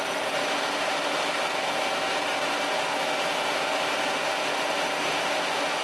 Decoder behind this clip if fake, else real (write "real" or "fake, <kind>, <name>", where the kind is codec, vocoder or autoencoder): real